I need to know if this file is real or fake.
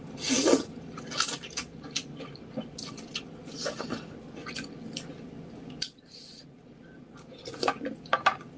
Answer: real